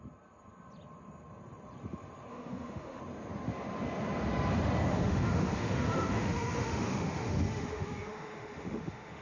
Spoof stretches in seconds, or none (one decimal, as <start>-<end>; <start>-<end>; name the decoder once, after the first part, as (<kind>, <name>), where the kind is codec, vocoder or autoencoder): 2.3-3.0 (autoencoder, DAC-VAE); 4.9-9.2